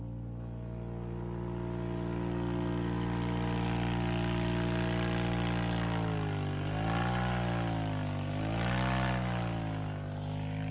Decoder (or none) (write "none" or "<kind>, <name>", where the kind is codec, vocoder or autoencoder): none